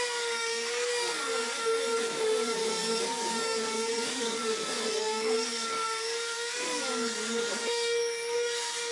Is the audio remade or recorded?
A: remade